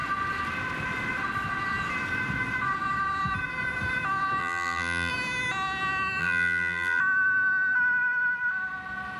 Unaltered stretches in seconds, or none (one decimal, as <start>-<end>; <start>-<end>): 0.0-4.4; 5.1-6.2; 7.0-9.2